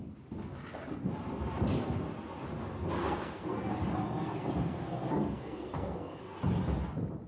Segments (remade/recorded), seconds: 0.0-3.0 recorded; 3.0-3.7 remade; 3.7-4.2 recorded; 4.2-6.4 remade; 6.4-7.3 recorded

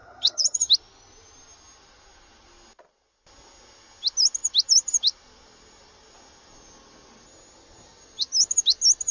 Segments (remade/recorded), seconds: 0.0-0.7 remade; 0.7-9.1 recorded